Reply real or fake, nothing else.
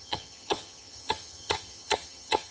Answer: fake